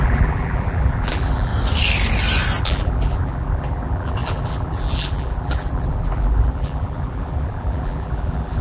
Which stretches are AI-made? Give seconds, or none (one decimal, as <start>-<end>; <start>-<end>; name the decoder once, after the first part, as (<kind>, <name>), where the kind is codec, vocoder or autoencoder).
0.0-1.5 (vocoder, BigVGAN v2); 2.6-8.6